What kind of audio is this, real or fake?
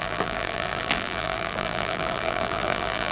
fake